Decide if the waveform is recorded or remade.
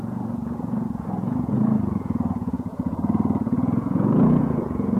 remade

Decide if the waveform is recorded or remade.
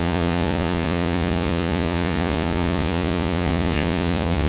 remade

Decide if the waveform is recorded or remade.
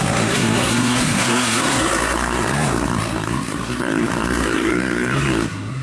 remade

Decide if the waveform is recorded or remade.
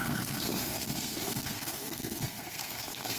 remade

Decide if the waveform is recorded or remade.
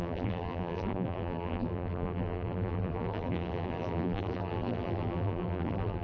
remade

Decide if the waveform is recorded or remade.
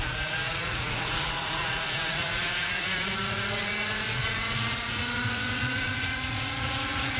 remade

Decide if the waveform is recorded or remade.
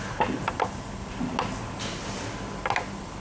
recorded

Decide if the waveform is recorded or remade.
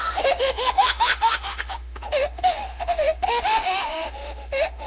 remade